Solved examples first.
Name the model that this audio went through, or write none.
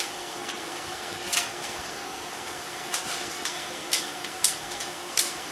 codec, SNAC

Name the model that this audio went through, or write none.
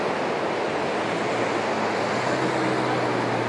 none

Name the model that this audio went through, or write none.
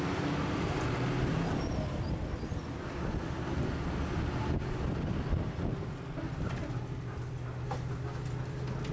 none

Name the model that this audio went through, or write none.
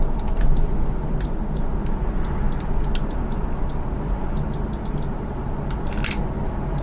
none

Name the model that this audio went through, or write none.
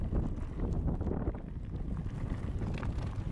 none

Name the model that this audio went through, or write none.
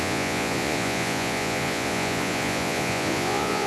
vocoder, Vocos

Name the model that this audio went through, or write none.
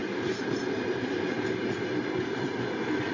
none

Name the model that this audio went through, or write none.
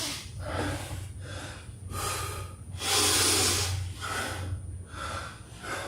none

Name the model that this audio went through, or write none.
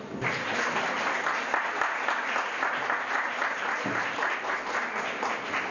none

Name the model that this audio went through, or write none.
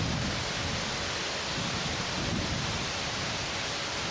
none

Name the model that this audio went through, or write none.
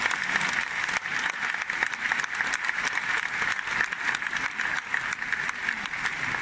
none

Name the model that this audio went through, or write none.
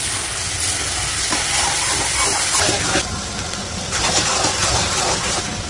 none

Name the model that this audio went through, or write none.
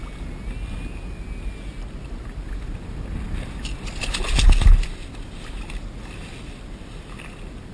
none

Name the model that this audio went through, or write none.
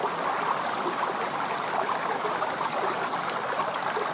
none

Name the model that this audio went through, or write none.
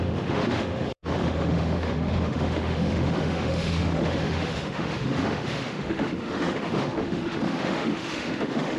autoencoder, DAC-VAE